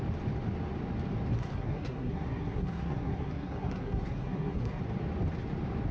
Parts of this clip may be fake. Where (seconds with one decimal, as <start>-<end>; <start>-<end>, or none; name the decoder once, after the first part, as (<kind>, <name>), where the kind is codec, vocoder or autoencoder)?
1.3-4.8 (codec, SNAC)